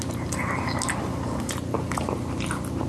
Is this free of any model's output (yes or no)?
yes